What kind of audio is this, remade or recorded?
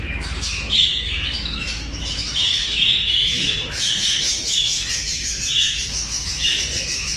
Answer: remade